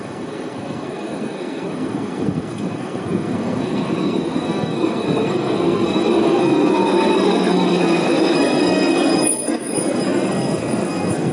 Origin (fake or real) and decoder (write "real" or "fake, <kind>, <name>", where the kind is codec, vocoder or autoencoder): fake, codec, SNAC